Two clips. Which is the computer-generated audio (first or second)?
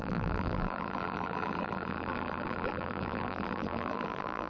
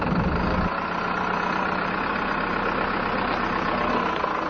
first